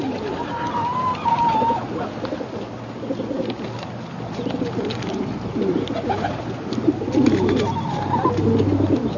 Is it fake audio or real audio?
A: real